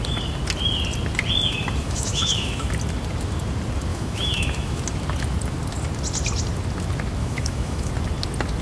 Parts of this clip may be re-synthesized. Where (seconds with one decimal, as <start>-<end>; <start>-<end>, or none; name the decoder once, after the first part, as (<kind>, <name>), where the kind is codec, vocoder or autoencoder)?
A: 1.8-2.7 (autoencoder, DAC-VAE); 3.9-4.8; 7.2-7.9